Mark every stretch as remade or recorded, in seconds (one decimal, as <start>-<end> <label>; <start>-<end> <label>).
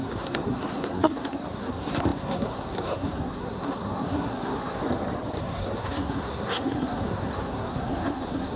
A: 0.0-4.8 remade; 4.8-5.4 recorded; 5.4-8.6 remade